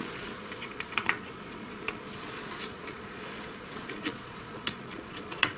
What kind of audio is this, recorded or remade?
remade